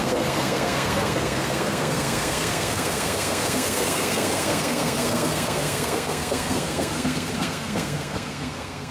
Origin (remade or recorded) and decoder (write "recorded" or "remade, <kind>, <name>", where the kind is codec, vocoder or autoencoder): remade, codec, SNAC